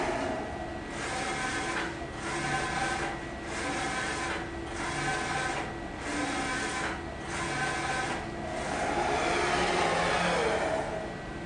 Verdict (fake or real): real